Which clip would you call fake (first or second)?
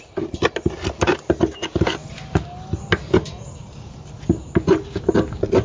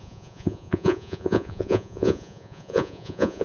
second